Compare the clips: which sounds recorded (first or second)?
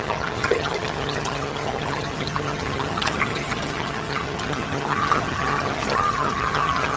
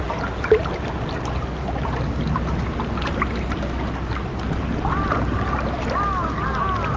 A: second